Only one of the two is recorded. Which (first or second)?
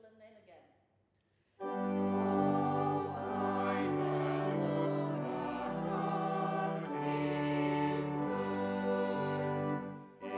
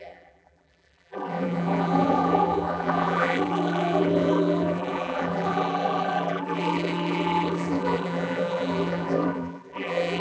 first